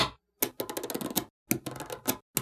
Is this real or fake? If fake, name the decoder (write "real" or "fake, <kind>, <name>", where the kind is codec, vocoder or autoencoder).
real